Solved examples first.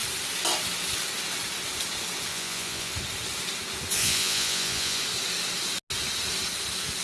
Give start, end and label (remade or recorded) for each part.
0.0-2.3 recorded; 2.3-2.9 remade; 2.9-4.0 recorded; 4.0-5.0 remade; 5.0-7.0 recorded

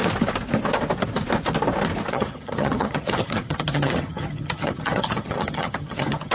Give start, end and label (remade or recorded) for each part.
0.0-2.1 recorded; 2.1-6.3 remade

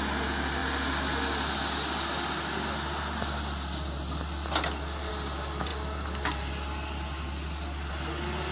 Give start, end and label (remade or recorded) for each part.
0.0-8.5 recorded

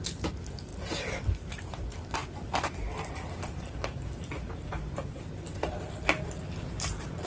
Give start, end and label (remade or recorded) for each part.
0.0-7.3 recorded

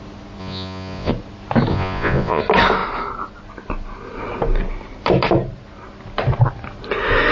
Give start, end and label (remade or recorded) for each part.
0.0-0.4 recorded; 0.4-1.1 remade; 1.1-1.7 recorded; 1.7-2.4 remade; 2.4-7.3 recorded

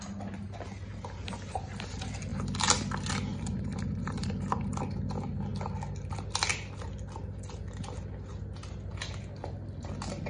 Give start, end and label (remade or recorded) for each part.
0.0-3.3 recorded; 3.3-4.8 remade; 4.8-10.3 recorded

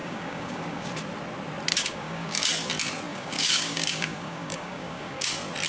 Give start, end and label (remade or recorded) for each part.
0.0-0.9 remade; 0.9-1.7 recorded; 1.7-2.5 remade; 2.5-3.1 recorded; 3.1-5.3 remade; 5.3-5.7 recorded